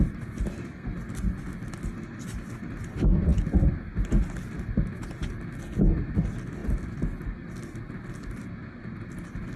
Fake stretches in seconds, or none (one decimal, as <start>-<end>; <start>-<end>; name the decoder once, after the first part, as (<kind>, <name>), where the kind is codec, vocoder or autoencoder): none